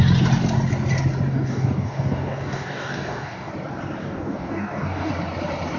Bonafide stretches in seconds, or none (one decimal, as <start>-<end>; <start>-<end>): 0.0-1.3; 3.5-4.0; 5.1-5.8

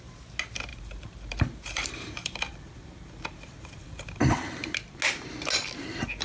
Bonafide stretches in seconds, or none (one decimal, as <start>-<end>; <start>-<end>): 0.0-0.7; 2.4-3.8; 4.6-6.2

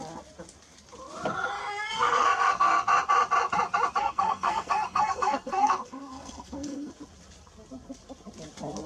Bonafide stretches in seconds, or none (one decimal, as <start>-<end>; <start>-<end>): 0.0-1.6; 2.9-4.0; 6.9-8.9